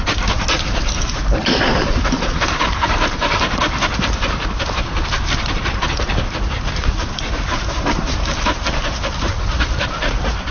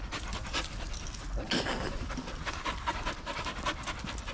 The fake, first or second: first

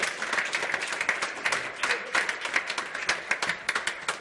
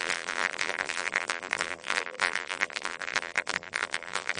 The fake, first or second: second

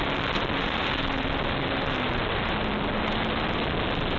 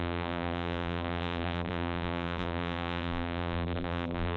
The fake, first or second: second